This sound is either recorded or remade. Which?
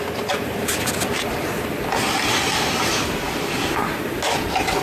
recorded